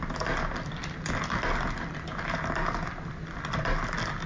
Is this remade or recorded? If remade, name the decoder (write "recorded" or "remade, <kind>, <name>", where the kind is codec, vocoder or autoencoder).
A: recorded